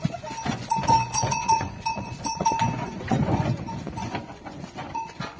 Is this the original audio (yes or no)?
no